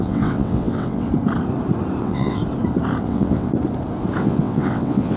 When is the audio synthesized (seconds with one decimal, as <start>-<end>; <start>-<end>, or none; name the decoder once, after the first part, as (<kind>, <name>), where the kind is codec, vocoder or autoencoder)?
0.0-1.1 (vocoder, WaveNeXt); 2.0-2.4; 3.0-3.5; 4.2-5.2